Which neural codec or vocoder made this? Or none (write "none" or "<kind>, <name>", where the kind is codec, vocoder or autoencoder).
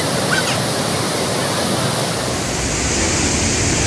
none